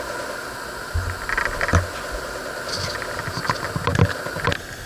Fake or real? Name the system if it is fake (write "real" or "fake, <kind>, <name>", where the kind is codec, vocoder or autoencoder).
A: real